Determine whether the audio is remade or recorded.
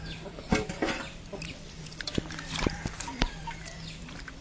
remade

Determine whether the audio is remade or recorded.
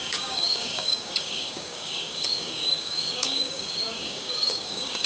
remade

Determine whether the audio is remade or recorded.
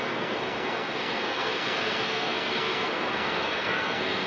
remade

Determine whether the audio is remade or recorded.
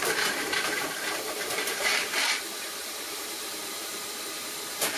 remade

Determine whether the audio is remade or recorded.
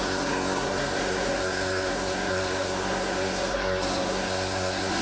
remade